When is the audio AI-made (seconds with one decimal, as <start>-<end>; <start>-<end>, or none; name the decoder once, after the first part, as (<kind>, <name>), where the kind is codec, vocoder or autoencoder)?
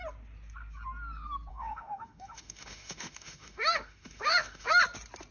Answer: 1.5-4.7 (autoencoder, DAC-VAE)